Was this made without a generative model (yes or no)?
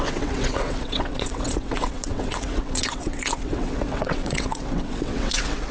no